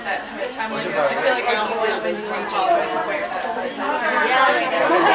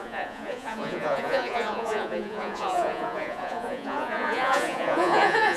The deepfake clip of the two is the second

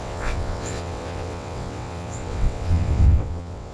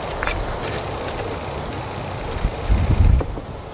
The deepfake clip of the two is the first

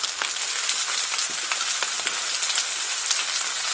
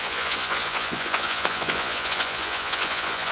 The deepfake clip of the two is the second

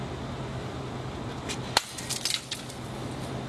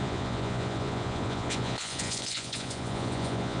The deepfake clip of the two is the second